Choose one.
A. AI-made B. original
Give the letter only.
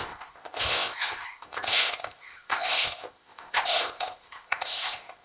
A